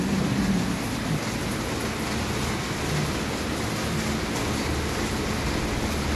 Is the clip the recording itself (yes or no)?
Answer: yes